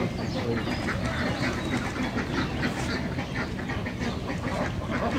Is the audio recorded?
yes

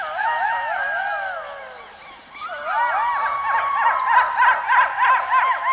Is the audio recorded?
yes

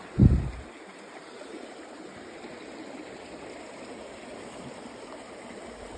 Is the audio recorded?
yes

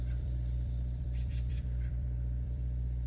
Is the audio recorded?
no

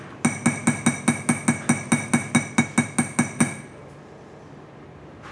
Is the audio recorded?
yes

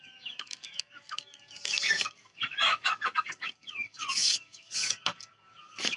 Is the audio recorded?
no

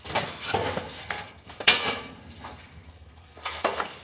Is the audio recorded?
no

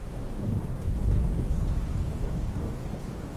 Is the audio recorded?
no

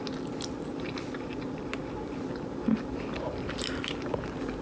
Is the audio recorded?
yes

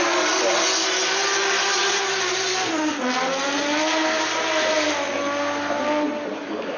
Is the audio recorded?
yes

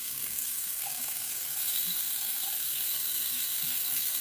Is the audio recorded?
no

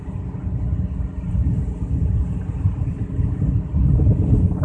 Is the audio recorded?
yes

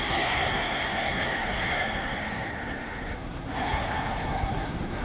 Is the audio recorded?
no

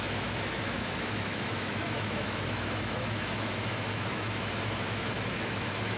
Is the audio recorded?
no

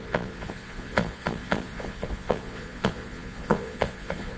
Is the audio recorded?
no